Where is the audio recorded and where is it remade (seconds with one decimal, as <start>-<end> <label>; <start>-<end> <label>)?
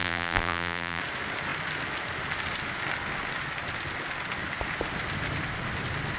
0.0-1.0 remade; 1.0-6.2 recorded